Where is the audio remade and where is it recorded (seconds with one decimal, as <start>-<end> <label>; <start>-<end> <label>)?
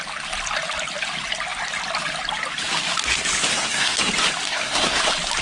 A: 0.0-3.5 recorded; 3.5-4.1 remade; 4.1-4.5 recorded; 4.5-5.0 remade; 5.0-5.4 recorded